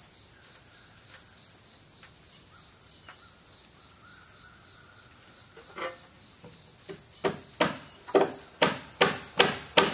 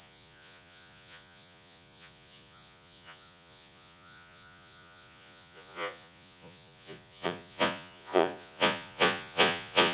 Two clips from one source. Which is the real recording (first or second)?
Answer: first